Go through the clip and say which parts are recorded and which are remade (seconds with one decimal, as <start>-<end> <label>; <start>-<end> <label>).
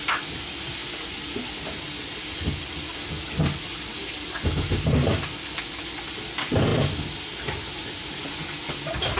0.0-9.2 recorded